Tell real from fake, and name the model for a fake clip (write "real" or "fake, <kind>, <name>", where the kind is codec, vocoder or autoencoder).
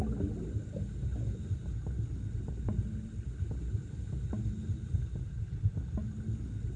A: real